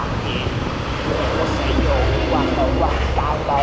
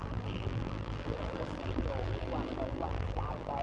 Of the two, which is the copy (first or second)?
second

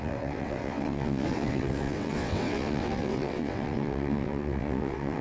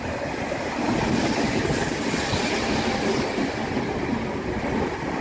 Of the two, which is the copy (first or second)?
first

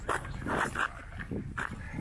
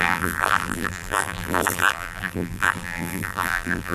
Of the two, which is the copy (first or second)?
second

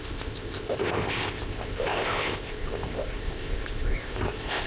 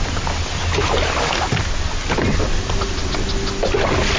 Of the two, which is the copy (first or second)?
first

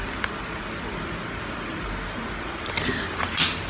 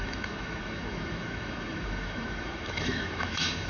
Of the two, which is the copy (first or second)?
second